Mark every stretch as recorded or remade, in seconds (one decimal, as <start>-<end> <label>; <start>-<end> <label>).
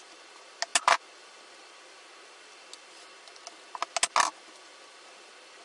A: 0.0-5.6 recorded